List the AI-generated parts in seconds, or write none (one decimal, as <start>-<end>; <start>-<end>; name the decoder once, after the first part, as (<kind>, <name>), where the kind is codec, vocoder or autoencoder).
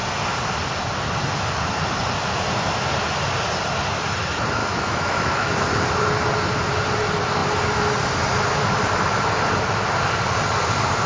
4.6-5.7 (autoencoder, DAC-VAE)